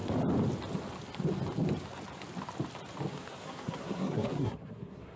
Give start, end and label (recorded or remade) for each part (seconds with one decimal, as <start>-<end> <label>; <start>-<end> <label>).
0.0-3.1 recorded; 3.1-5.2 remade